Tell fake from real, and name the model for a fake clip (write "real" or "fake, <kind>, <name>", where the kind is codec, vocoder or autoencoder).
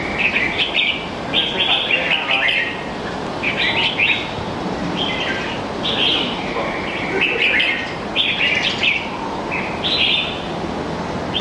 real